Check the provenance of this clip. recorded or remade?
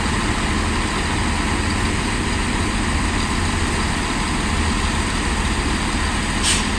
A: recorded